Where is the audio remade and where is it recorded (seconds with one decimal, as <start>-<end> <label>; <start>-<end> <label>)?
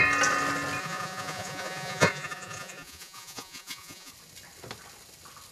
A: 0.0-0.8 recorded; 0.8-4.1 remade; 4.1-5.5 recorded